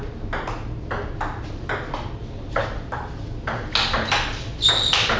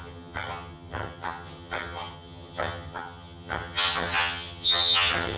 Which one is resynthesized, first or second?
second